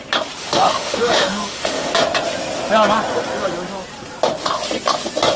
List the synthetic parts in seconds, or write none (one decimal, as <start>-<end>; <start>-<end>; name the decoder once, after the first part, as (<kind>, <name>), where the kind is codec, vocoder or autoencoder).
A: 0.4-1.9 (autoencoder, DAC-VAE)